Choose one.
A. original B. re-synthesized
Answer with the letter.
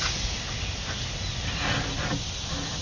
A